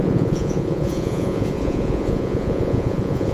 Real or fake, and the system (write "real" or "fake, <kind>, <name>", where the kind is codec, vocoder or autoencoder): fake, vocoder, Vocos